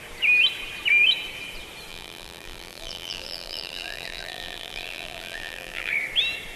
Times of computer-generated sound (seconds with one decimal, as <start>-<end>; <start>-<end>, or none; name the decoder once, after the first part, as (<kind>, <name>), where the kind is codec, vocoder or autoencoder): 1.9-5.9 (vocoder, BigVGAN v2)